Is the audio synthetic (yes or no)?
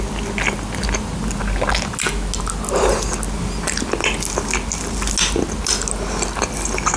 no